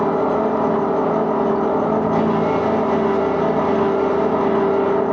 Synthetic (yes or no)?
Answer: no